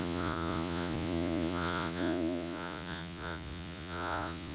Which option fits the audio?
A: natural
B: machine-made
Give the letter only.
B